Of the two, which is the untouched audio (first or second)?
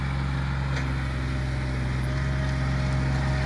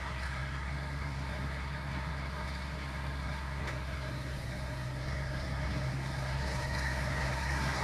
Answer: first